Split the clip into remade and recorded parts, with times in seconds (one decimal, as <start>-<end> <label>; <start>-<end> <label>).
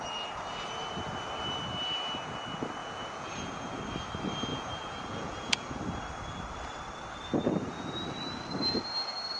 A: 0.0-2.8 recorded; 2.8-3.8 remade; 3.8-4.5 recorded; 4.5-5.8 remade; 5.8-9.4 recorded